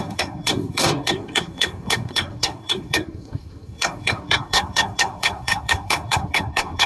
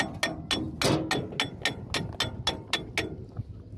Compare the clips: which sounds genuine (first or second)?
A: second